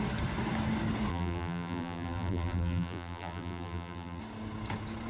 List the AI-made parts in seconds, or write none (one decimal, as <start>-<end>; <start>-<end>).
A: 1.1-4.2

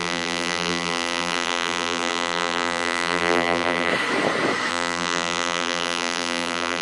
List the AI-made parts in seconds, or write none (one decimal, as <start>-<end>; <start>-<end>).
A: 0.0-3.9; 4.7-6.8

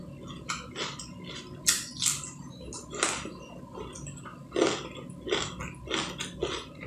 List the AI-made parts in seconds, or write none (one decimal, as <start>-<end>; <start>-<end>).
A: none

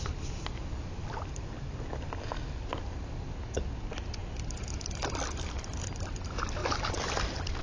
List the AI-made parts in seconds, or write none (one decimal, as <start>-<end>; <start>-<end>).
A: 6.6-7.6

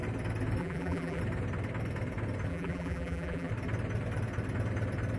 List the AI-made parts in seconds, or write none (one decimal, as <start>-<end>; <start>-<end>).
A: 0.6-1.2; 2.5-3.5

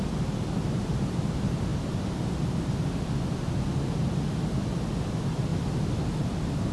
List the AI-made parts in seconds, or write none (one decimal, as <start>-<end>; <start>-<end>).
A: none

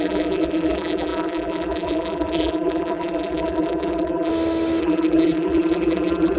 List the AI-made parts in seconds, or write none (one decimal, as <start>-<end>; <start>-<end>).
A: 0.0-4.3; 4.8-6.4